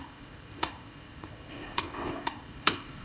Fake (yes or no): yes